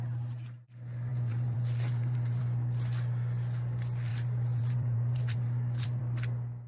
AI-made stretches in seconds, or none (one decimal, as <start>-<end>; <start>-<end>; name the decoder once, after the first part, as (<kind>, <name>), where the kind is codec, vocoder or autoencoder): 1.1-2.4 (vocoder, BigVGAN v2); 4.1-6.0